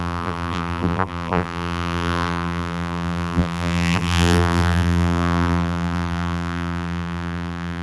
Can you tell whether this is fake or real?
fake